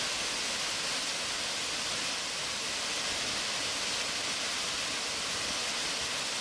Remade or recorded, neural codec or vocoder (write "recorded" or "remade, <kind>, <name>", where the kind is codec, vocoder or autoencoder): recorded